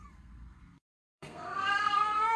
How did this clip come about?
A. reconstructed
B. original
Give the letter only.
A